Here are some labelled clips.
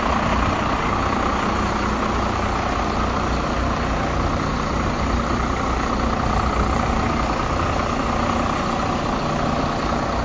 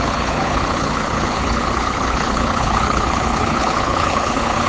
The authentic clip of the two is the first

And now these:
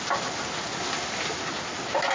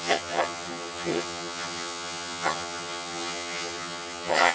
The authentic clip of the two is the first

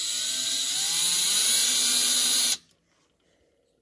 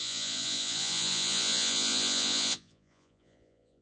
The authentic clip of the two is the first